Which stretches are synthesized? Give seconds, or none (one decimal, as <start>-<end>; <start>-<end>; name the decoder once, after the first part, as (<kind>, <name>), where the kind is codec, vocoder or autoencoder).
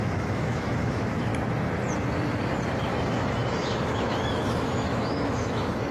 0.0-1.3 (autoencoder, DAC-VAE); 2.9-5.9